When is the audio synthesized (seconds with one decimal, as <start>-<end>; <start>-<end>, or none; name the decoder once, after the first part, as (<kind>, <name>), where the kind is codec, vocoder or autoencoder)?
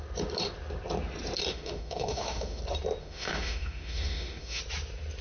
1.5-2.6 (autoencoder, DAC-VAE); 3.0-4.6